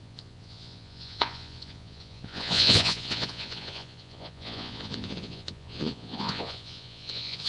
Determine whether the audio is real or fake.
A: fake